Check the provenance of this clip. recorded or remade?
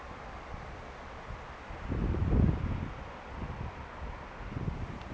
recorded